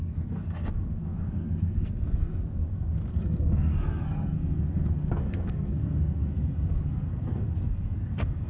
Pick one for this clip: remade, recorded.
remade